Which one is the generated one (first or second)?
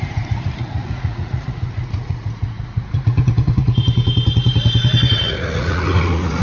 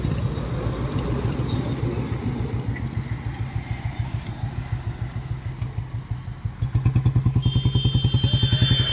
first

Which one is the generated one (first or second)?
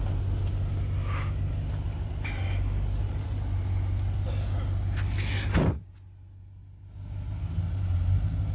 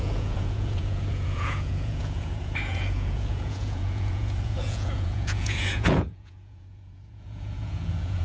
second